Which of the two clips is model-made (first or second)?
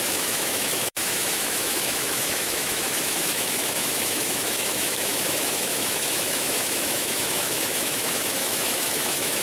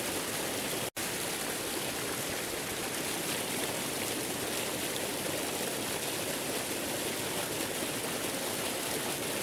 first